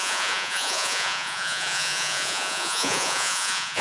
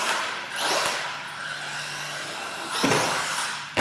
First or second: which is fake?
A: first